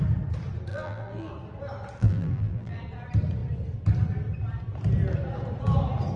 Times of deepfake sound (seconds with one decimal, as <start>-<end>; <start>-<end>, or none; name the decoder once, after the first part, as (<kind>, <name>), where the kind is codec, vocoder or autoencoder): 0.7-1.3 (vocoder, BigVGAN v2); 2.0-2.8